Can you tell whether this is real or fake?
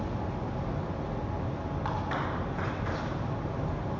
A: real